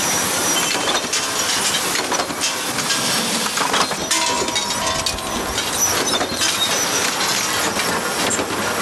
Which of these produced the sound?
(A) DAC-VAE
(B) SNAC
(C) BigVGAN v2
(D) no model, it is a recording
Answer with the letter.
D